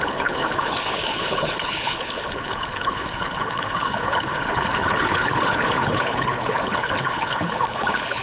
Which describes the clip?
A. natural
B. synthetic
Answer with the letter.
B